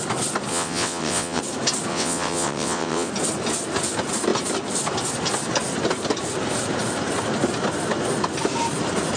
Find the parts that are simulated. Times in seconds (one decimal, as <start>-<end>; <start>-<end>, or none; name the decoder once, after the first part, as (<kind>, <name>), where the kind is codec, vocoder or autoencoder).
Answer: 0.5-1.4 (vocoder, WaveNeXt); 1.9-3.1